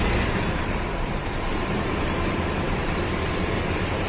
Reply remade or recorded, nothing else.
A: remade